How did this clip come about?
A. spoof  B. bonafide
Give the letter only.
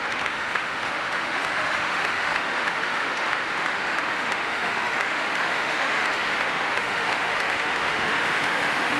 A